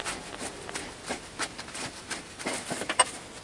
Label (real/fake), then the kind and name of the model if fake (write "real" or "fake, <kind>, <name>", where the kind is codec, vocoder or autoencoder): real